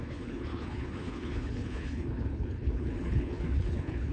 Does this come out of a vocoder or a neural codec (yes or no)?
yes